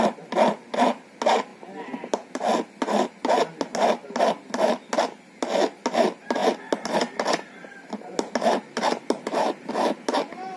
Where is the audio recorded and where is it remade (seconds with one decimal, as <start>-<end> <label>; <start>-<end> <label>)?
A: 0.0-10.6 recorded